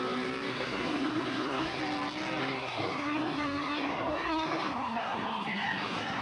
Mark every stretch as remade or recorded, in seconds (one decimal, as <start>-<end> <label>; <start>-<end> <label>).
0.0-0.5 recorded; 0.5-1.8 remade; 1.8-2.4 recorded; 2.4-6.2 remade